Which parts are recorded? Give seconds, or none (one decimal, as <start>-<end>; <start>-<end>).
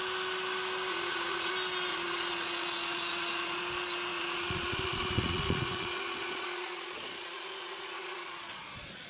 0.0-0.9; 1.5-1.9; 3.6-4.1